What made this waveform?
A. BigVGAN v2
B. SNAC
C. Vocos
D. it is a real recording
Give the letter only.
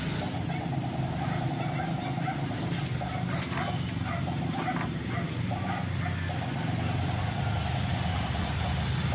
D